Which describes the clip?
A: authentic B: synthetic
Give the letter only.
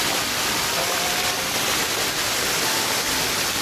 A